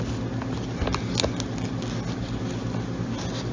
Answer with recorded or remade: recorded